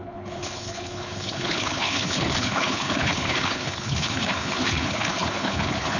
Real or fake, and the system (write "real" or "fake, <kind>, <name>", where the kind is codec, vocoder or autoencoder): fake, codec, HILCodec